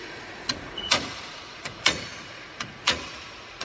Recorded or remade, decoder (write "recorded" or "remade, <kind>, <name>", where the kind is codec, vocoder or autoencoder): remade, vocoder, Vocos